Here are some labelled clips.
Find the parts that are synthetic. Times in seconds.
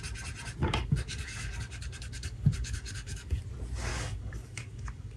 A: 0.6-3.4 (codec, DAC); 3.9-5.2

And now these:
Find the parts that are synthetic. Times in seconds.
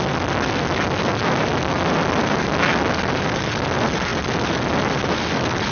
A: none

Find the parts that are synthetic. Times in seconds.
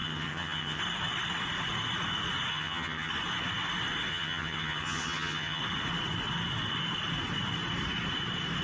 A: 0.0-0.8 (vocoder, HiFi-GAN); 2.5-3.1; 4.1-5.6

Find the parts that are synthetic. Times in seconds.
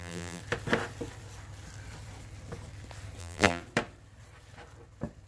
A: 0.0-0.4 (vocoder, BigVGAN v2); 3.2-3.6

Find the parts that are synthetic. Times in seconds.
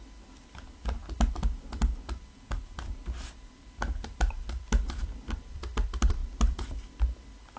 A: 0.0-1.0 (vocoder, BigVGAN v2); 3.3-7.6